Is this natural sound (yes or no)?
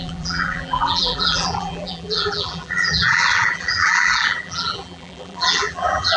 no